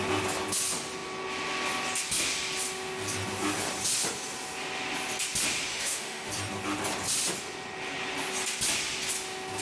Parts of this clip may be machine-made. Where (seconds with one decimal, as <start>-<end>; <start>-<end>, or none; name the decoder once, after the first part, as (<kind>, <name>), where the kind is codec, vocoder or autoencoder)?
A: 5.7-6.3 (autoencoder, DAC-VAE)